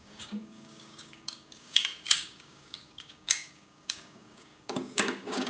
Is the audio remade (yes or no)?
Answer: yes